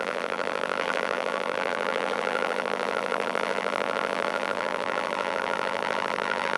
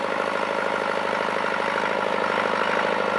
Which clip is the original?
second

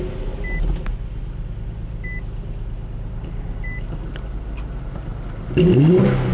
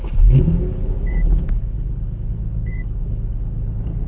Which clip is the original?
first